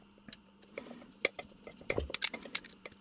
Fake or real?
real